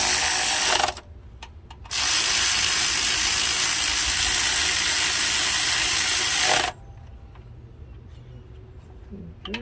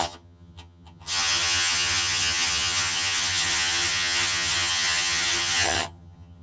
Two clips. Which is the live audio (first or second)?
first